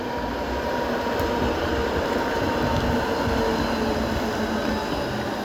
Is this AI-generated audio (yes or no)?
no